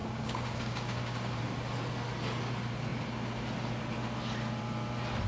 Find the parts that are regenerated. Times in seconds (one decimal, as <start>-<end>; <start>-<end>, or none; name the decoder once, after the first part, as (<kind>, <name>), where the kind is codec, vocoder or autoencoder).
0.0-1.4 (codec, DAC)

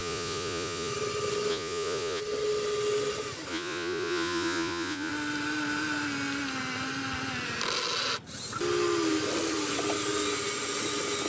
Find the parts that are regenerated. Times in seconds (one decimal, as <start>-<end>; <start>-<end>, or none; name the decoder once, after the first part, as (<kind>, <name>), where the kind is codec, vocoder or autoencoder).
0.0-0.9 (vocoder, Vocos); 1.5-2.2; 3.5-5.1

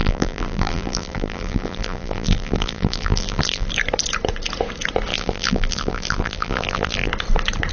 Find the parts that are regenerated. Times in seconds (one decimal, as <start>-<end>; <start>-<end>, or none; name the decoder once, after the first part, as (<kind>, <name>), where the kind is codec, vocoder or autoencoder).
0.0-3.7 (vocoder, BigVGAN v2); 5.1-7.1